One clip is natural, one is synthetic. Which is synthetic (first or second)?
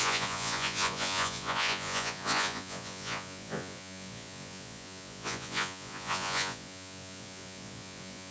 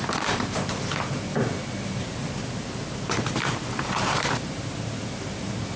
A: first